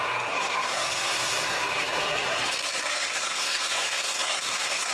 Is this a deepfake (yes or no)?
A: yes